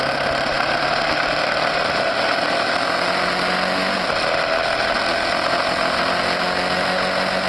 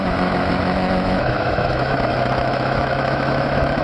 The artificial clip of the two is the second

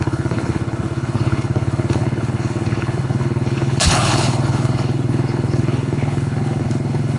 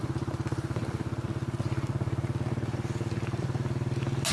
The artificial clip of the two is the first